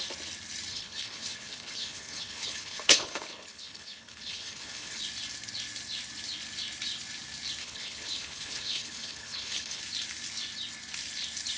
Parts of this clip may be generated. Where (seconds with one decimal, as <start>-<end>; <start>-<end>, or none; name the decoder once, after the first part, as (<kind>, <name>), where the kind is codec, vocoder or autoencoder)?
0.7-5.0 (codec, HILCodec); 7.6-9.8